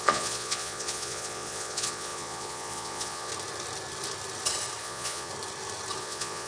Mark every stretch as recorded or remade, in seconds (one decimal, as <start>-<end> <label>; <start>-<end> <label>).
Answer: 0.0-3.3 remade; 3.3-4.8 recorded; 4.8-5.3 remade; 5.3-6.0 recorded; 6.0-6.5 remade